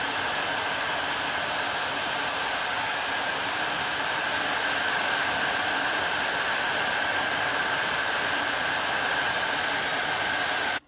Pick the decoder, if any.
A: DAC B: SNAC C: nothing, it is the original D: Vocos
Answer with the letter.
C